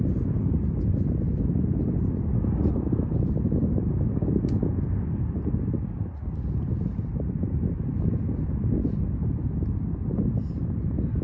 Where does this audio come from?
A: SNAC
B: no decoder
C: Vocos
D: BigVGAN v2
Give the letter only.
B